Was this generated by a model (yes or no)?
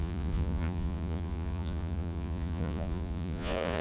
yes